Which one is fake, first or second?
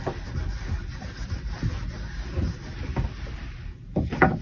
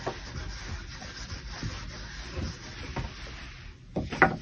first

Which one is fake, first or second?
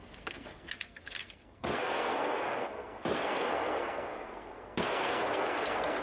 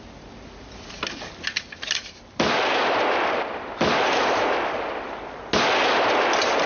first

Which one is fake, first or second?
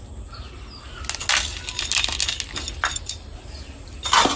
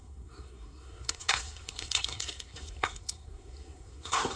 second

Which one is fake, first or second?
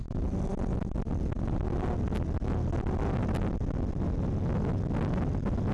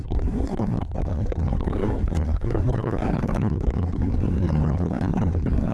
second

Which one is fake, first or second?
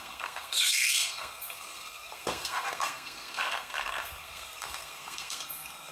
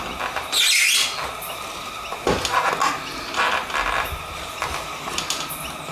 first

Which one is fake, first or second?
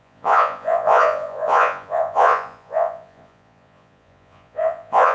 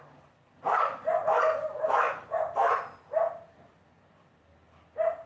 first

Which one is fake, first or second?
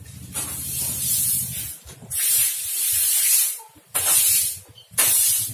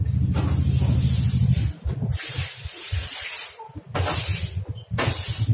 first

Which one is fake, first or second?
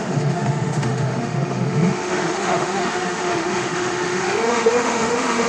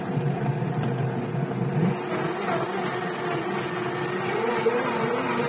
first